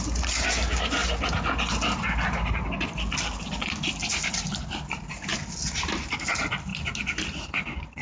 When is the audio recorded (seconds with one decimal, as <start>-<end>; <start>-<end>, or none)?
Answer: 0.0-8.0